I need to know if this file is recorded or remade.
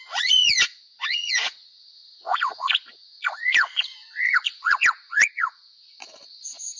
remade